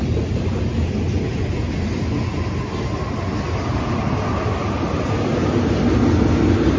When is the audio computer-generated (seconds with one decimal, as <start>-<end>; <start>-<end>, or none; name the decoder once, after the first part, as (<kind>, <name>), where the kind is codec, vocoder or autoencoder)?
none